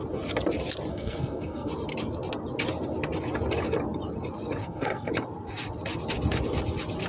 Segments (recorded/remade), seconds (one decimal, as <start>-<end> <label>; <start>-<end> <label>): 0.0-0.9 recorded; 0.9-1.7 remade; 1.7-4.6 recorded; 4.6-5.1 remade; 5.1-7.1 recorded